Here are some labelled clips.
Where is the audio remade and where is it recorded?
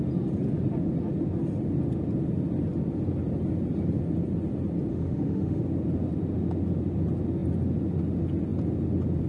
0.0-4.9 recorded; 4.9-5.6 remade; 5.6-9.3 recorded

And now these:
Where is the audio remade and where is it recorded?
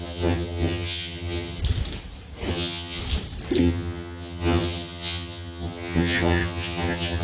0.0-1.6 remade; 1.6-2.5 recorded; 2.5-3.0 remade; 3.0-3.6 recorded; 3.6-7.2 remade